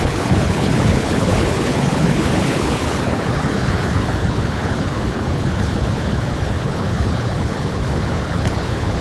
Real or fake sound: fake